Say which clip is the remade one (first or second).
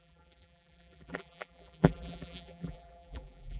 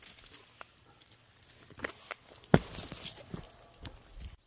first